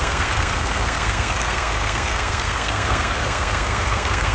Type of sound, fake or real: fake